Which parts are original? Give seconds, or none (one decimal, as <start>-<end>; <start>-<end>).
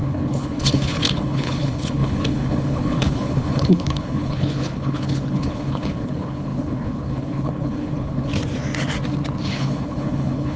8.3-9.4